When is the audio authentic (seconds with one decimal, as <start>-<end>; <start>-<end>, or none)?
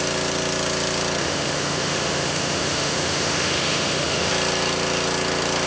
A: 0.0-1.2; 4.3-5.7